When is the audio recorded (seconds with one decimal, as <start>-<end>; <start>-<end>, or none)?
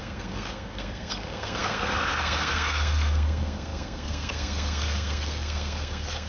none